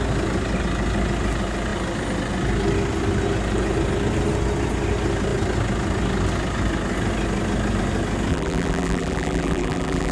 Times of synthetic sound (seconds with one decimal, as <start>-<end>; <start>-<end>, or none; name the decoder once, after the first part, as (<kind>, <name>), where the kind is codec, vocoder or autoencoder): 8.3-10.1 (vocoder, BigVGAN v2)